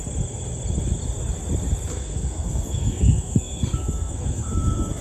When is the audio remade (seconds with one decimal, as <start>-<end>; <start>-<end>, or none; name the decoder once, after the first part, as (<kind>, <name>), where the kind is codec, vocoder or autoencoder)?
1.9-5.0 (codec, SNAC)